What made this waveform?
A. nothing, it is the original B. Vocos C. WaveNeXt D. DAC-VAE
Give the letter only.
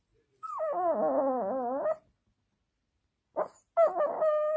A